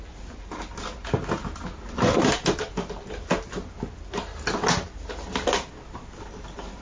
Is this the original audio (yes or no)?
yes